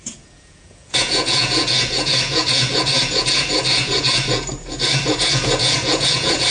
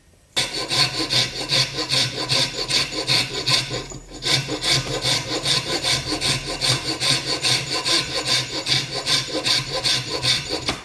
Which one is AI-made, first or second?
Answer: first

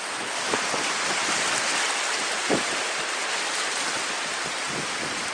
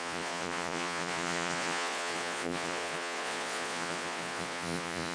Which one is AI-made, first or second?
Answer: second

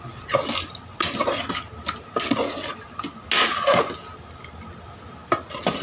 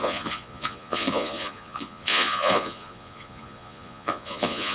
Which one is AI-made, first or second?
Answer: second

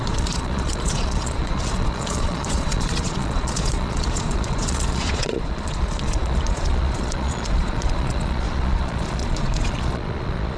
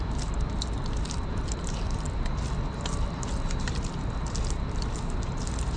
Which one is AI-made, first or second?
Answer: first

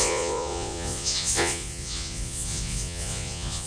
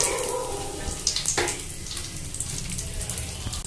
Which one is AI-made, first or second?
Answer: first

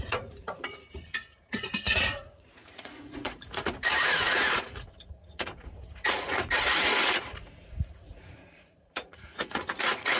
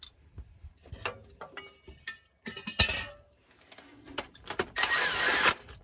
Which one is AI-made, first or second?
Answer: first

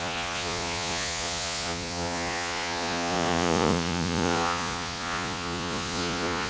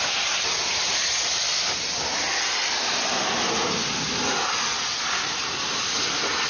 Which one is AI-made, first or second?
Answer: first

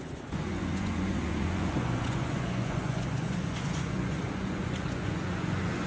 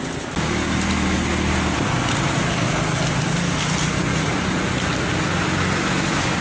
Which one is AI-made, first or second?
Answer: first